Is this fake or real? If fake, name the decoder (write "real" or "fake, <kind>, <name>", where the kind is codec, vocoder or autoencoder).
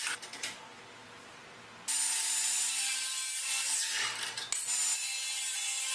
real